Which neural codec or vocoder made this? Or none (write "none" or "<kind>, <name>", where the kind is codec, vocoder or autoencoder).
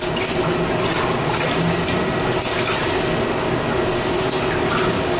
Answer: none